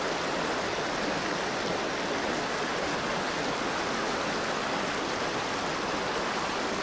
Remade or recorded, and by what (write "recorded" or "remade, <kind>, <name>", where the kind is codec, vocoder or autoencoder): recorded